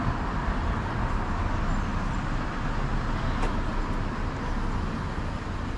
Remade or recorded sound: recorded